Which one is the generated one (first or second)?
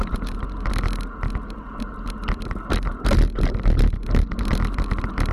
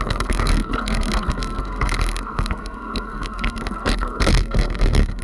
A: second